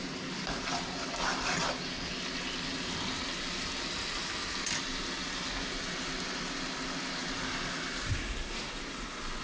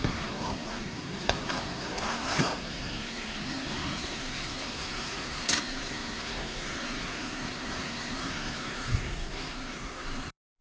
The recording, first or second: first